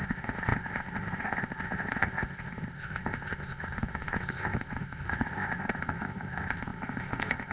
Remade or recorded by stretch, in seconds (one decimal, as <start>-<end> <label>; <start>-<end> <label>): 0.0-7.5 remade